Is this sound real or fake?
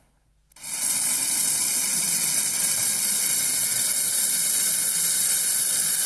real